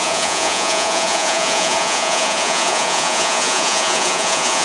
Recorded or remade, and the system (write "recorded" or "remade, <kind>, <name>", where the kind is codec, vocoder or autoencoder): remade, vocoder, Vocos